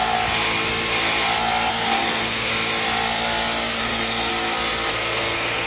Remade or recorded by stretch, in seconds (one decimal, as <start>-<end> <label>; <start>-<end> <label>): 0.0-1.7 recorded; 1.7-2.5 remade; 2.5-3.8 recorded; 3.8-4.3 remade; 4.3-4.9 recorded; 4.9-5.7 remade